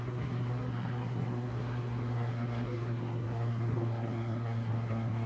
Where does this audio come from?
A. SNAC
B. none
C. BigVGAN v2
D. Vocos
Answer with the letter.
A